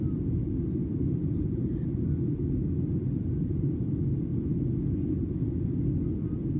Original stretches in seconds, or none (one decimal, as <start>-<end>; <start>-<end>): 0.4-3.3; 4.3-5.1; 5.5-6.6